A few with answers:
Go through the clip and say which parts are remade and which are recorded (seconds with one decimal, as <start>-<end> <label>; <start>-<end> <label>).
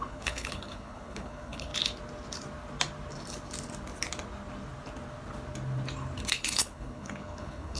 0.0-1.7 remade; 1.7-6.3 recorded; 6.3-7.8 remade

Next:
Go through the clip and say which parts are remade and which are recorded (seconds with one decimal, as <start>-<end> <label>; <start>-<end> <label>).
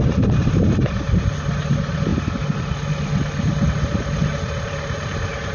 0.0-5.5 recorded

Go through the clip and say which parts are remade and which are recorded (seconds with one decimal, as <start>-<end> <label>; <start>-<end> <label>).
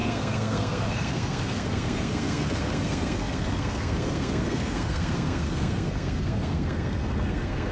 0.0-7.7 remade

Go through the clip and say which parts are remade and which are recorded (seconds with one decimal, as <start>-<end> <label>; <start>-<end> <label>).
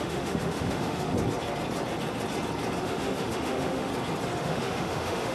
0.0-1.1 remade; 1.1-2.8 recorded; 2.8-3.9 remade; 3.9-4.4 recorded; 4.4-5.3 remade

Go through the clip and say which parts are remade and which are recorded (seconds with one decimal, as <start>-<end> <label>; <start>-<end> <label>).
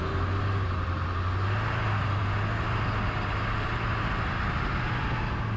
0.0-5.6 recorded